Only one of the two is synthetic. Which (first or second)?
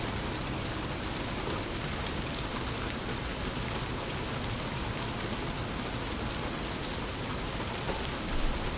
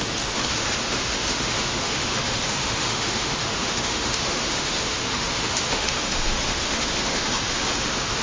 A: second